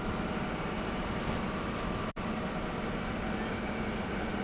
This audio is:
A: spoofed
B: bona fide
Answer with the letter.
B